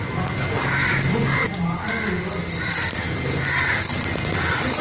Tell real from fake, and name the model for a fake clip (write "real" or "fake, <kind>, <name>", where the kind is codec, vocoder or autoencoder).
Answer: real